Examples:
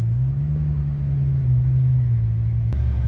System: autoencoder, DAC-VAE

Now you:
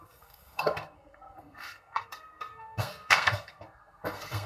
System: codec, SNAC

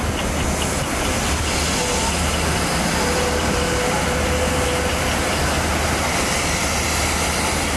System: none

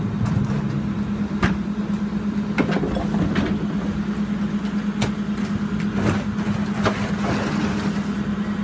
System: none